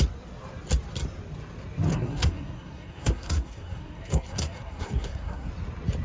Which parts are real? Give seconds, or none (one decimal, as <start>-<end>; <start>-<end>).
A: 0.0-1.9; 5.5-6.0